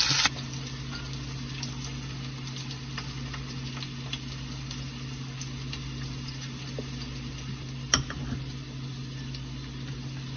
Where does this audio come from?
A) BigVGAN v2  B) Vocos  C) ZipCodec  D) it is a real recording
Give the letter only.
D